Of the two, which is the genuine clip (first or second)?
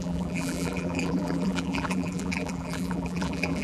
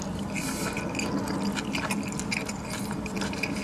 second